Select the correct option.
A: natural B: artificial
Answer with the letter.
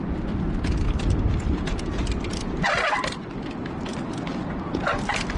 A